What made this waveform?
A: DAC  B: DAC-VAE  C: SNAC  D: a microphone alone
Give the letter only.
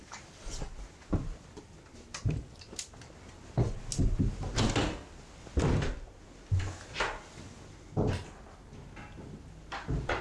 D